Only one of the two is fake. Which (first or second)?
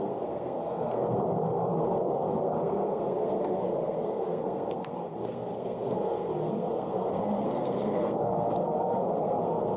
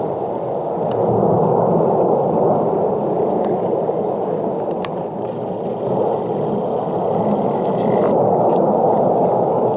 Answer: first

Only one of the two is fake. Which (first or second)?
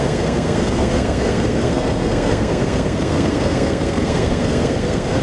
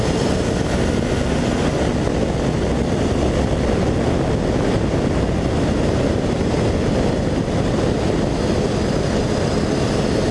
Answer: first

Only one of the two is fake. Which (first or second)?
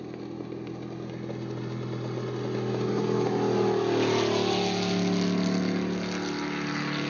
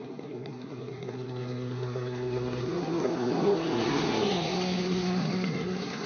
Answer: second